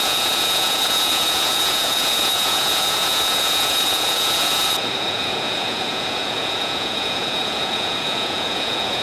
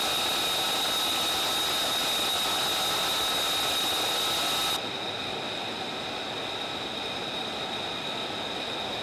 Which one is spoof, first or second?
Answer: first